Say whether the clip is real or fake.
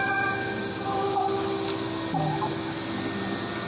real